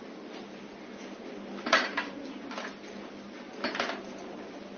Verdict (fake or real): real